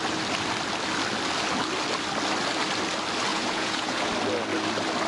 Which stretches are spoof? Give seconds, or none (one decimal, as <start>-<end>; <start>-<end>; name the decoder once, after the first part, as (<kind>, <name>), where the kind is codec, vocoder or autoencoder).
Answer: 3.3-4.1 (vocoder, Vocos)